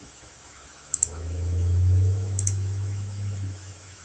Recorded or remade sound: remade